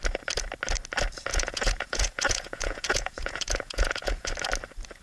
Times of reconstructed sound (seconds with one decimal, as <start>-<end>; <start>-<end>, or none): 1.3-4.3